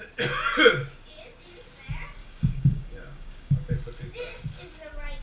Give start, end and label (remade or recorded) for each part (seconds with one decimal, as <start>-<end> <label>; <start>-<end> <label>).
0.0-2.2 recorded; 2.2-3.7 remade; 3.7-5.2 recorded